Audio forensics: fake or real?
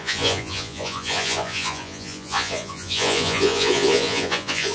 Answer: fake